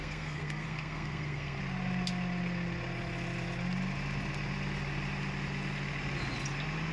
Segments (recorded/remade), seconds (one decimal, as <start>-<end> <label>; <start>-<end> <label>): 0.0-1.6 remade; 1.6-6.9 recorded